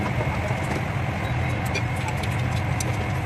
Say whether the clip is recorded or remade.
recorded